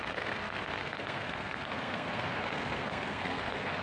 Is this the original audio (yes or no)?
no